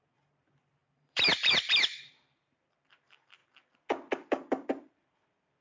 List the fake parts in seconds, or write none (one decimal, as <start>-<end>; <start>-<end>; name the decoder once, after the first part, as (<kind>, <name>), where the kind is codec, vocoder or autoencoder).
0.0-3.4 (vocoder, BigVGAN v2); 4.7-5.6